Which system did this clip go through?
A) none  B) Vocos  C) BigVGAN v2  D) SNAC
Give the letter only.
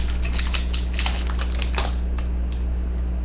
A